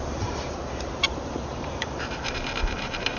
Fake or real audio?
fake